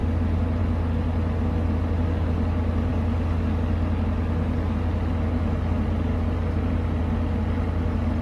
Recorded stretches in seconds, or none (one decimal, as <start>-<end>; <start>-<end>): 0.0-8.2